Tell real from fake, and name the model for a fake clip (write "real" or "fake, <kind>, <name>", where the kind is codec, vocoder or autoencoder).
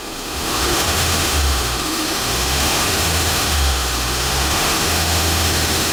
fake, autoencoder, DAC-VAE